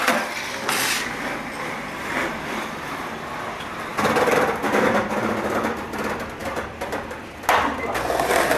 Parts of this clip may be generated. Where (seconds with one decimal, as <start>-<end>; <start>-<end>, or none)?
2.2-2.8; 6.4-7.4